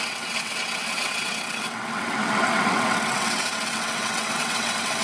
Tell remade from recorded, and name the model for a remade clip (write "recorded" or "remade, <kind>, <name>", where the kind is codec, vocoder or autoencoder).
remade, vocoder, WaveNeXt